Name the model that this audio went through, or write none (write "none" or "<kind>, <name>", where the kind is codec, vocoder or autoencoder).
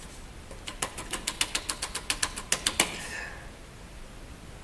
none